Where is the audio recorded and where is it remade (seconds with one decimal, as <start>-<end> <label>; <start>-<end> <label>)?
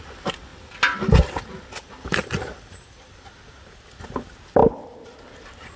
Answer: 0.0-5.8 recorded